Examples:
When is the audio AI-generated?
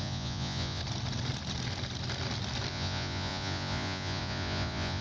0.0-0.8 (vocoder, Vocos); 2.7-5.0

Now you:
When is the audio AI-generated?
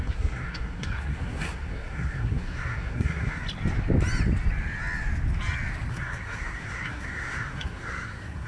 0.0-3.4 (codec, SNAC); 5.9-8.5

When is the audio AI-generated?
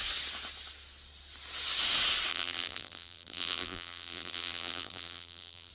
2.3-5.7 (vocoder, BigVGAN v2)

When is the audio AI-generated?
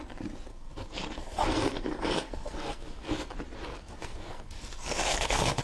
0.5-3.3 (codec, SNAC); 3.7-5.6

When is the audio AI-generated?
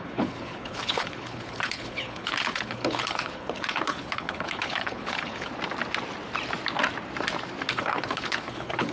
0.0-5.5 (codec, HILCodec); 7.7-8.9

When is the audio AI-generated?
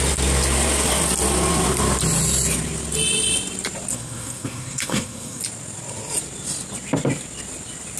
3.9-5.4 (codec, SNAC)